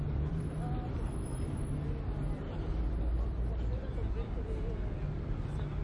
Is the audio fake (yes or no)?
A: no